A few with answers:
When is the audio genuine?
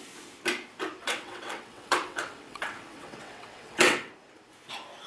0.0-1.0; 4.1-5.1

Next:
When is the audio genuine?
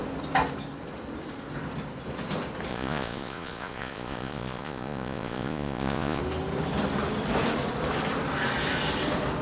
0.0-2.7; 6.2-9.4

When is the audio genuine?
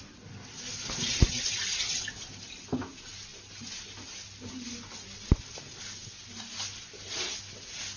0.0-8.0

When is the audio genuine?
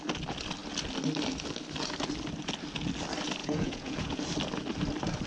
0.0-3.4; 4.2-5.3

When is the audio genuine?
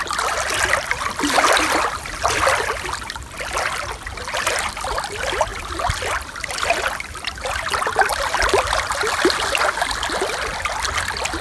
0.0-5.5; 6.1-11.4